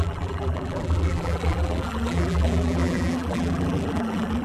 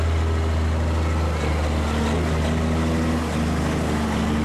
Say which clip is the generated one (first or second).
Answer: first